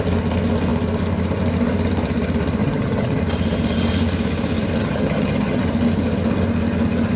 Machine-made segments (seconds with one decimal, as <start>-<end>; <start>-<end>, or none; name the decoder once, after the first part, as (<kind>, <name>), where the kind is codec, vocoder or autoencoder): 2.6-3.2 (vocoder, HiFi-GAN); 4.8-5.6